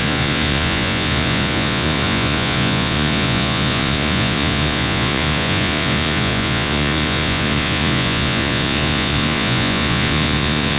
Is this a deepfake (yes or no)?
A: yes